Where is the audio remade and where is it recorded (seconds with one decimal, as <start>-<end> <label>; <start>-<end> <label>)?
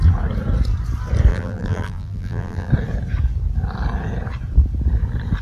0.0-1.3 recorded; 1.3-2.7 remade; 2.7-5.4 recorded